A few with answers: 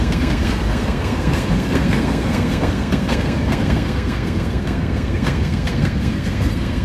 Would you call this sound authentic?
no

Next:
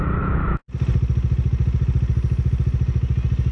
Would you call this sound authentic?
yes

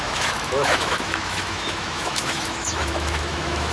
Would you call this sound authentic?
no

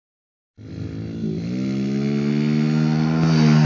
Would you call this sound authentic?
yes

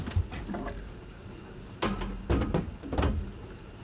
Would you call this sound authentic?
yes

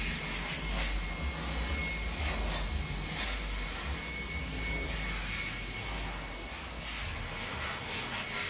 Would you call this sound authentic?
yes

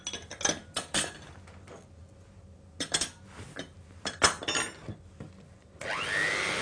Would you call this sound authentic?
yes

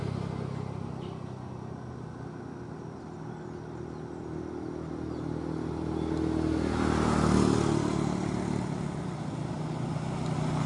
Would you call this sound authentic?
yes